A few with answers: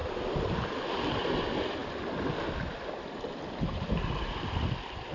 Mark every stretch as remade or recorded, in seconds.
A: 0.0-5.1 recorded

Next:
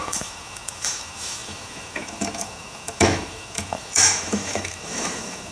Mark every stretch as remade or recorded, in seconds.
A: 0.0-5.5 remade

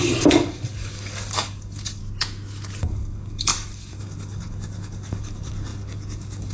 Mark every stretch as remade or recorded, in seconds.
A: 0.0-2.0 remade; 2.0-2.8 recorded; 2.8-6.5 remade